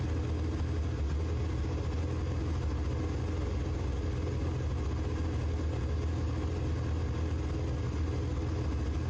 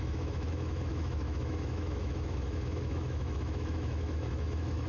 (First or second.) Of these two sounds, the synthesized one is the second